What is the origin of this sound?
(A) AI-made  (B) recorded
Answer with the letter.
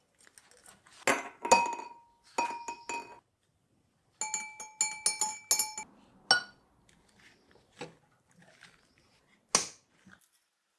B